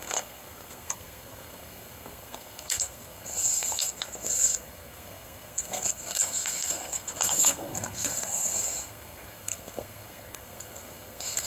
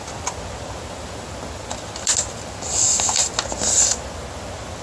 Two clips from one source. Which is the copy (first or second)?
first